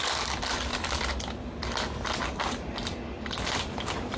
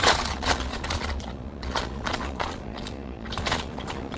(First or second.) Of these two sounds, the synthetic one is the second